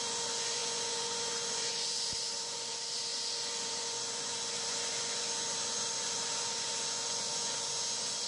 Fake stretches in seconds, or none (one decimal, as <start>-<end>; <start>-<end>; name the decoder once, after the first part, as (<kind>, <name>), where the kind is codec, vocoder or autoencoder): 0.0-8.3 (vocoder, Vocos)